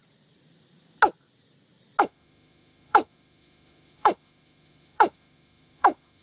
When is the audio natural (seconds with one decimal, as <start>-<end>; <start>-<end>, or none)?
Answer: 0.0-2.0